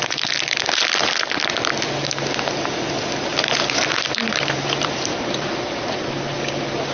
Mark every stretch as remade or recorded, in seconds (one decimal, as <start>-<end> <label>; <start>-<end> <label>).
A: 0.0-3.3 recorded; 3.3-6.1 remade; 6.1-6.9 recorded